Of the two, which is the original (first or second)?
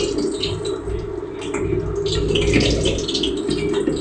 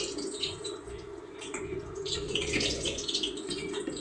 first